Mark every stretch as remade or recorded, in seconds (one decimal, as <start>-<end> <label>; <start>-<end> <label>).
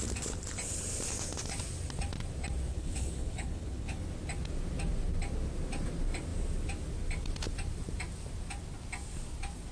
0.0-2.7 recorded; 2.7-4.0 remade; 4.0-9.7 recorded